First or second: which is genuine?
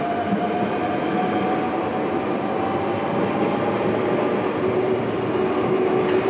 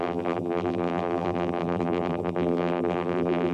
first